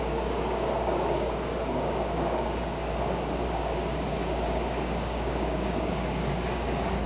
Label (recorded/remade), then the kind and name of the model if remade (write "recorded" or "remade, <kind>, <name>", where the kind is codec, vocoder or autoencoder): remade, codec, DAC